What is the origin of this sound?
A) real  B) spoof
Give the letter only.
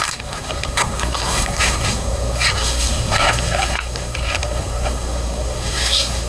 B